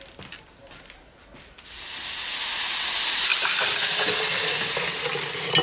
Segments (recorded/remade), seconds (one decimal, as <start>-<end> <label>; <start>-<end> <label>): 0.0-5.6 recorded